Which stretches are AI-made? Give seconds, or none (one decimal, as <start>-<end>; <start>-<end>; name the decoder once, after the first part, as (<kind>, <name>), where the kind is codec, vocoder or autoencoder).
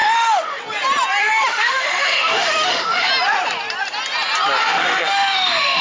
0.0-0.6 (autoencoder, DAC-VAE); 1.2-3.1; 4.6-5.8